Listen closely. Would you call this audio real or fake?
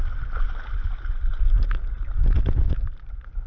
real